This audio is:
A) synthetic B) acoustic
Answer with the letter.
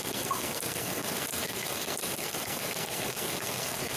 A